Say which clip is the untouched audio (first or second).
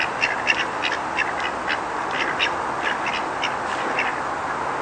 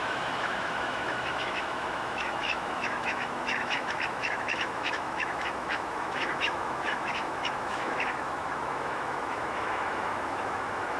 first